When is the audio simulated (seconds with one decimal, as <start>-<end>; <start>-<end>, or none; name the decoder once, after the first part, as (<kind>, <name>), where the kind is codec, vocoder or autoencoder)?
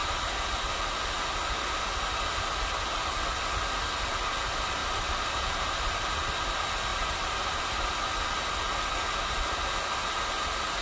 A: 4.8-6.2 (vocoder, BigVGAN v2); 6.9-7.9